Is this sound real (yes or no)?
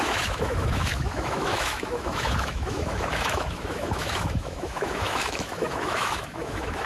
no